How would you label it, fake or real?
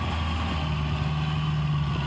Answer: real